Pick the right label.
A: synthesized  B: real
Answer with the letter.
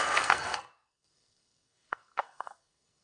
A